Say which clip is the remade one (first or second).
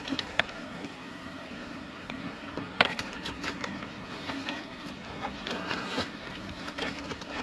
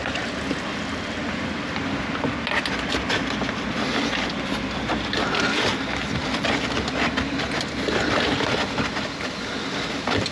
first